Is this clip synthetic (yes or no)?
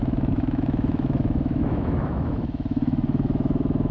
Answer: yes